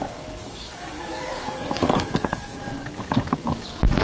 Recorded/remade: remade